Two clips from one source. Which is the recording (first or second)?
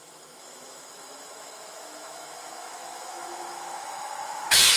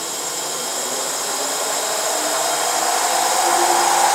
second